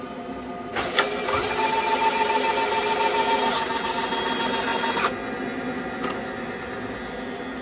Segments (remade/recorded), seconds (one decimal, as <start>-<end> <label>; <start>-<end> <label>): 0.0-7.6 recorded